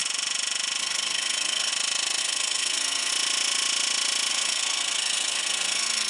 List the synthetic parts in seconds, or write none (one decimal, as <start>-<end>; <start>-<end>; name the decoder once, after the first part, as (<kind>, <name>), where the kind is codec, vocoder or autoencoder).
0.8-1.7 (codec, SNAC); 2.2-3.1; 4.3-6.1